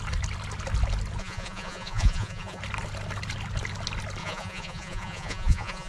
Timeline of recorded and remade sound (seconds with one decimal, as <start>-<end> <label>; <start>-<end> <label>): 0.0-1.2 recorded; 1.2-2.6 remade; 2.6-4.2 recorded; 4.2-5.9 remade